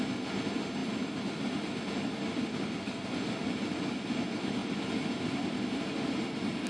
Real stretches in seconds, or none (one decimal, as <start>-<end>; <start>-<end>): 0.0-6.7